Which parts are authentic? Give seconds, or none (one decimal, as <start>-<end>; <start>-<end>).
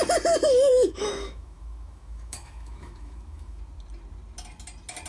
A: 0.0-0.7; 3.6-5.1